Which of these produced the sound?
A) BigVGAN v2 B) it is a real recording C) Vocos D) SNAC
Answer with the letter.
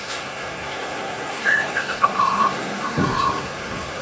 D